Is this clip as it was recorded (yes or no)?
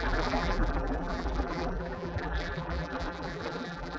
no